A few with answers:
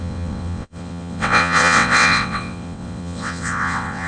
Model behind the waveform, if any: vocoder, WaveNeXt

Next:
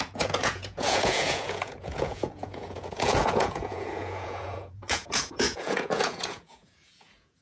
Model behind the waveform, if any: vocoder, Vocos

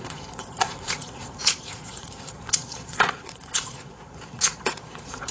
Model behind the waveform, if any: vocoder, Vocos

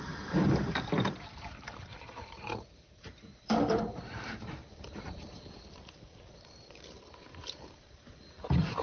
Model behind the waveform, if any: vocoder, BigVGAN v2